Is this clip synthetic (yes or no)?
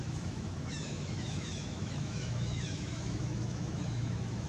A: yes